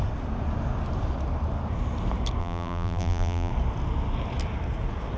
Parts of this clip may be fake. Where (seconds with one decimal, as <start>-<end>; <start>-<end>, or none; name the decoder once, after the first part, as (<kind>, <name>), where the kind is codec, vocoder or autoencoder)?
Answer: 2.4-3.5 (vocoder, BigVGAN v2)